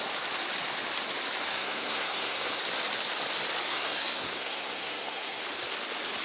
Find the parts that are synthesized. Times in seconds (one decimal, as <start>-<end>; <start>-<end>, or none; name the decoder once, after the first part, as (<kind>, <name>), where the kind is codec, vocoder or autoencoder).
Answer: 1.5-2.6 (codec, SNAC); 3.7-5.4